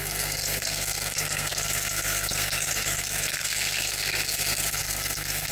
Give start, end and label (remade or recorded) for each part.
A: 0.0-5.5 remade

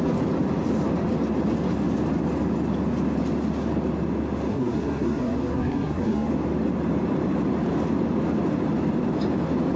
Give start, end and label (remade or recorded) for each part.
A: 0.0-4.5 recorded; 4.5-6.3 remade; 6.3-9.8 recorded

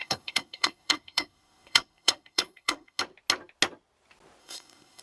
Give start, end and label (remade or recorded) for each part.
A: 0.0-3.0 remade; 3.0-4.4 recorded; 4.4-5.0 remade

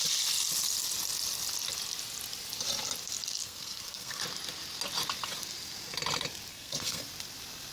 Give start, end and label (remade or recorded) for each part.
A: 0.0-3.4 recorded; 3.4-4.2 remade; 4.2-6.5 recorded; 6.5-7.0 remade; 7.0-7.7 recorded

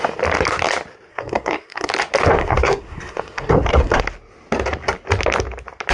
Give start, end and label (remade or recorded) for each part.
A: 0.0-1.1 recorded; 1.1-1.9 remade; 1.9-2.4 recorded; 2.4-4.0 remade; 4.0-5.9 recorded